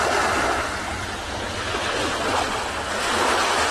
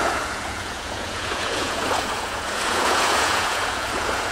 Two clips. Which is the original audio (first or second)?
first